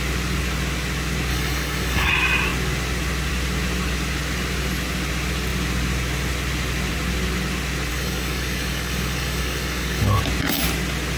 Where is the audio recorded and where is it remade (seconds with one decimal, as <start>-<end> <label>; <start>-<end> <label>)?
0.0-1.3 recorded; 1.3-2.1 remade; 2.1-7.9 recorded; 7.9-10.2 remade; 10.2-11.2 recorded